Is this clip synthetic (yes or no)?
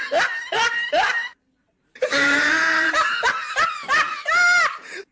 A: yes